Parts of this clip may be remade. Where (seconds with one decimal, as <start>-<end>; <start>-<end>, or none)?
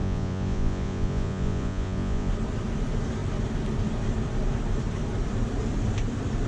0.0-2.3